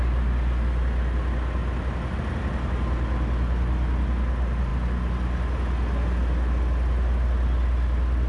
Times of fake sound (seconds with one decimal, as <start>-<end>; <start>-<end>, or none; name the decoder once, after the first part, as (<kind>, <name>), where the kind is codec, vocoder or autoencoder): none